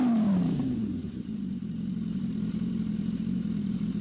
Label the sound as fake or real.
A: fake